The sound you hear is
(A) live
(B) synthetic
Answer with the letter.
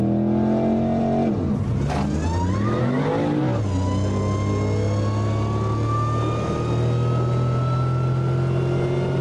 A